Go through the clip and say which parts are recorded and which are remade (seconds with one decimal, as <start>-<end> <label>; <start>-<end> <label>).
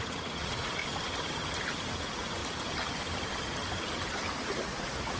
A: 0.0-0.8 remade; 0.8-1.9 recorded; 1.9-2.4 remade; 2.4-4.3 recorded; 4.3-5.2 remade